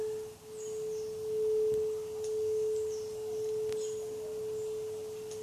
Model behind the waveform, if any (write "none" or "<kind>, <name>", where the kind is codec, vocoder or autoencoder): none